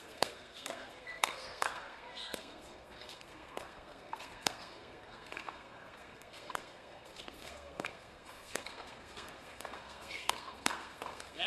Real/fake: fake